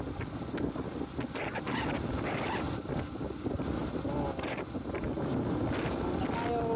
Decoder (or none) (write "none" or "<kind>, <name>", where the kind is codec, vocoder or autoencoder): none